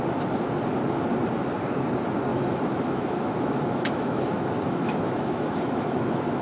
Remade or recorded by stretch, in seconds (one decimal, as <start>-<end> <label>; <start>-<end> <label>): 0.0-2.3 recorded; 2.3-6.4 remade